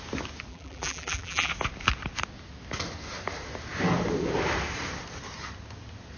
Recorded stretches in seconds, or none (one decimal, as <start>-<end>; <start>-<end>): 0.0-0.5; 1.5-6.2